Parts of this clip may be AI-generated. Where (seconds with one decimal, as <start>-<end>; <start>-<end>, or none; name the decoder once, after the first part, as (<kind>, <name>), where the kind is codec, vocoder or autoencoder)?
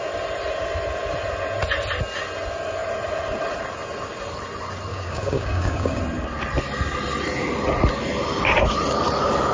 4.9-6.0 (codec, DAC)